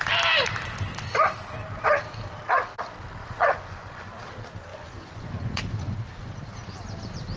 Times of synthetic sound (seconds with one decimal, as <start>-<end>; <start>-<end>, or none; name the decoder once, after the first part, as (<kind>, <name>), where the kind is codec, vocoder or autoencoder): 3.2-4.0 (vocoder, Vocos); 4.7-5.6

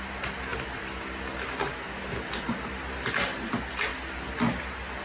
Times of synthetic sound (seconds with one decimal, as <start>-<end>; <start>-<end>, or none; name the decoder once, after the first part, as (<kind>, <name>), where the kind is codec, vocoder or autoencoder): none

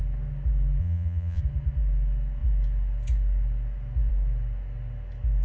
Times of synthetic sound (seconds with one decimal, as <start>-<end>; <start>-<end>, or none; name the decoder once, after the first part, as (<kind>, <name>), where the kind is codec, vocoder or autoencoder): 0.8-1.4 (vocoder, Vocos)

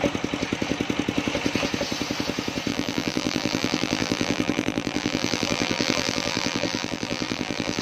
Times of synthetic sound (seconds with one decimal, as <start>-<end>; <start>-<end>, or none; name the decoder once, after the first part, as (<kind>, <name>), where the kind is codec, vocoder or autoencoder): 2.7-7.8 (vocoder, BigVGAN v2)

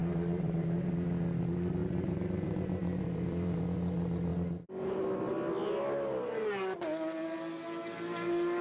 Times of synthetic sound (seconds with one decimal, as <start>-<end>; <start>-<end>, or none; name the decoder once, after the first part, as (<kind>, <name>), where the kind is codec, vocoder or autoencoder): 0.0-0.9 (vocoder, BigVGAN v2); 1.8-3.6

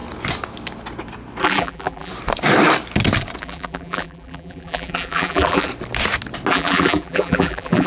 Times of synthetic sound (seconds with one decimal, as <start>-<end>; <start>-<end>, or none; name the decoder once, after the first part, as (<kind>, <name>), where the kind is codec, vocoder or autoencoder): 1.4-2.1 (vocoder, BigVGAN v2); 3.4-5.7; 6.5-7.9

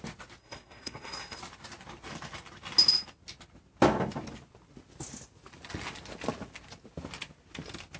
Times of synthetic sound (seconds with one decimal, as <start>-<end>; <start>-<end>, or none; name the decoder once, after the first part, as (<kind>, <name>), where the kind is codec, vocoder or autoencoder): 0.4-1.4 (codec, SNAC)

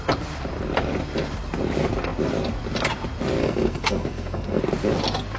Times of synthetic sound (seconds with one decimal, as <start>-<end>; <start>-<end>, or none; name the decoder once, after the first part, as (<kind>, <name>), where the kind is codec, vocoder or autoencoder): 3.4-4.6 (codec, SNAC)